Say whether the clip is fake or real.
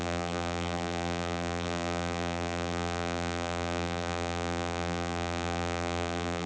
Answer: fake